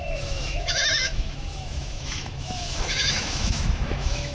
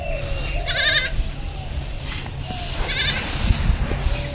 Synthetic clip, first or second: first